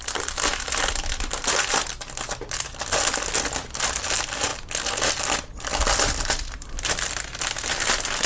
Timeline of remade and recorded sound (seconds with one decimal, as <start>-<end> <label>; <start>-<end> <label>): 0.0-8.3 recorded